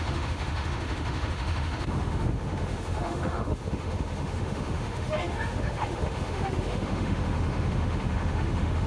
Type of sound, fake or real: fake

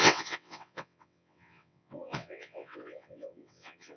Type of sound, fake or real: fake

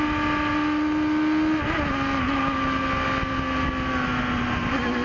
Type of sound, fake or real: real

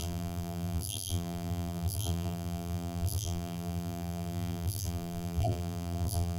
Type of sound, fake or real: fake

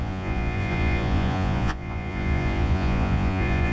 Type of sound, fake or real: fake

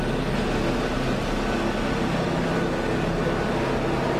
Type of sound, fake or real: real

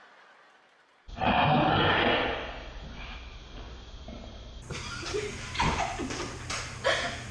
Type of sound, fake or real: real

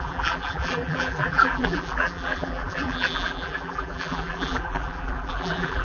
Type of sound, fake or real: fake